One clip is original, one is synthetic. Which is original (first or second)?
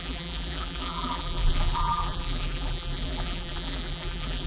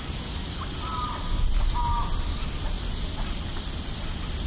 second